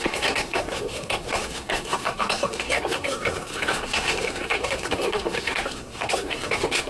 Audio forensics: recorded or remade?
remade